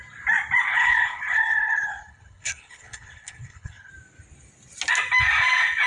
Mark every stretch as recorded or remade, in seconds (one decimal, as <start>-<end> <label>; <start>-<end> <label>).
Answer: 0.0-0.7 recorded; 0.7-3.9 remade; 3.9-5.9 recorded